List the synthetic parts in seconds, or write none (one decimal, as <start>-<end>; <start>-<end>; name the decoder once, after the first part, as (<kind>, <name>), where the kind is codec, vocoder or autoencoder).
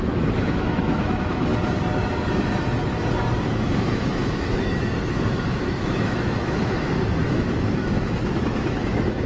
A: 0.0-1.5 (autoencoder, DAC-VAE); 3.4-9.3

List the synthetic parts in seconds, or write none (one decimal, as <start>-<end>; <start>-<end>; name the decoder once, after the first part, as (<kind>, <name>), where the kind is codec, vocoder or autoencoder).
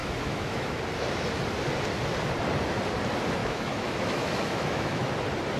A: 0.0-0.8 (autoencoder, DAC-VAE); 3.4-5.1